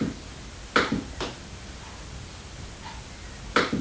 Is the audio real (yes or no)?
yes